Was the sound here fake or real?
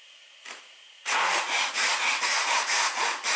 fake